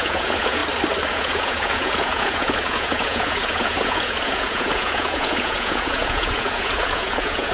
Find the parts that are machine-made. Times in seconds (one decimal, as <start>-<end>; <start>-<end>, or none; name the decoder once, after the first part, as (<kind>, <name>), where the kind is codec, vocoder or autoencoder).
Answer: 0.0-0.6 (vocoder, Vocos); 1.1-7.5